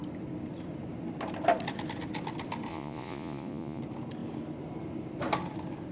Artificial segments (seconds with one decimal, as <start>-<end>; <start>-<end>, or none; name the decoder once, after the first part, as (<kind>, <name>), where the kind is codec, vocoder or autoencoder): 2.7-3.8 (vocoder, Vocos)